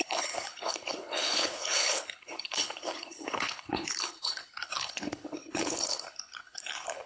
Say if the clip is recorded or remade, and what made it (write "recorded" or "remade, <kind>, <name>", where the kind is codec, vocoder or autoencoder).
remade, codec, HILCodec